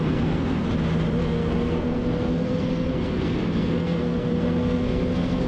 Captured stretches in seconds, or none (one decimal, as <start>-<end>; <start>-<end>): 0.7-1.2